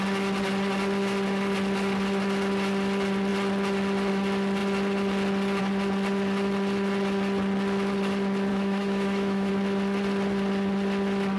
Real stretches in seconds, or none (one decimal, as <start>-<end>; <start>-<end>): 0.0-8.5; 9.5-11.4